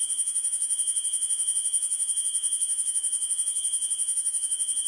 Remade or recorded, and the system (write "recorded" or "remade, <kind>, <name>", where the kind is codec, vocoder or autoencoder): remade, vocoder, Vocos